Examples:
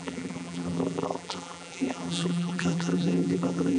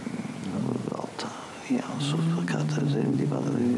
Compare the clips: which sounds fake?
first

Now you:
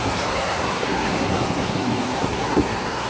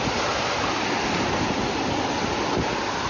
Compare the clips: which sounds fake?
first